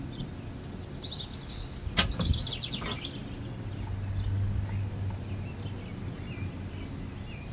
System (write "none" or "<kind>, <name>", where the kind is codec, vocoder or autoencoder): none